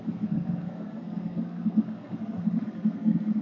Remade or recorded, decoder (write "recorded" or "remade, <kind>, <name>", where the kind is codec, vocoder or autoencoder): remade, codec, SNAC